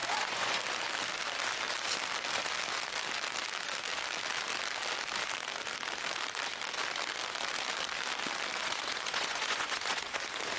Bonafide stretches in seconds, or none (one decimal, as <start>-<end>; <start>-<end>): 0.6-8.6; 10.2-10.6